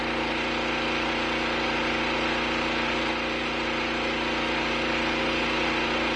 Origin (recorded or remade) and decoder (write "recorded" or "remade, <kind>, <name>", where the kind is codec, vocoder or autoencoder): recorded